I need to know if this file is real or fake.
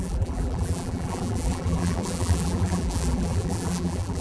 fake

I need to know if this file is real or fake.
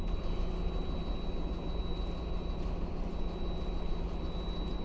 real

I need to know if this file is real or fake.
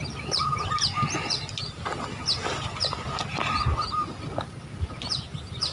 real